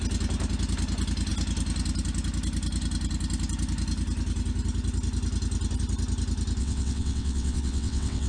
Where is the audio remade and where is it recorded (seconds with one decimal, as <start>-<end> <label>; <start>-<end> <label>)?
0.0-6.6 recorded; 6.6-8.3 remade